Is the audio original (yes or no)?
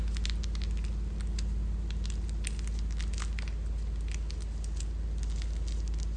yes